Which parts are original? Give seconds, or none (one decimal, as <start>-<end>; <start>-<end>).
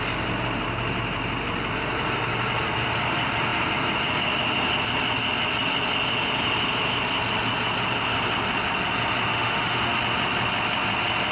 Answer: 0.0-9.3; 10.0-11.3